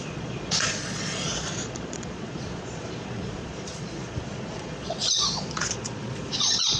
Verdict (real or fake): fake